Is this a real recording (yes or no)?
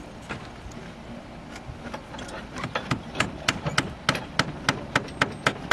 yes